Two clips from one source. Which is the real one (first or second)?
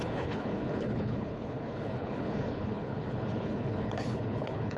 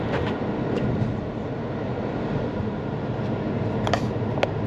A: second